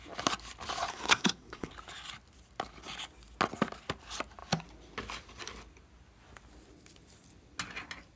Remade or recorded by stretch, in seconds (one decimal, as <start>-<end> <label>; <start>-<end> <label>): 0.0-0.9 recorded; 0.9-1.7 remade; 1.7-8.2 recorded